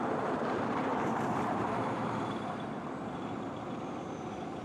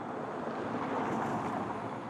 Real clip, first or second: second